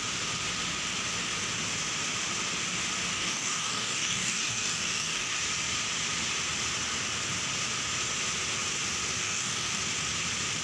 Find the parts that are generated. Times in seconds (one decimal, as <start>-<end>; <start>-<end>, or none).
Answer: 3.1-5.4; 9.2-9.8